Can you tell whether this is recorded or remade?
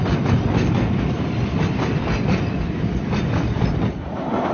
remade